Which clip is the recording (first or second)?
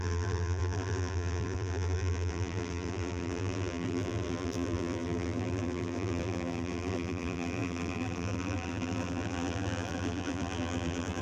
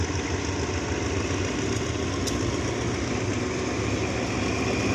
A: second